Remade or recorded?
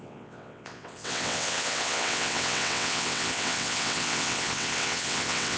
remade